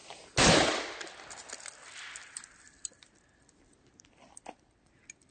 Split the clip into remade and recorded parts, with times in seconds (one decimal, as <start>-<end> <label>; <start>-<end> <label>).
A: 0.0-5.3 recorded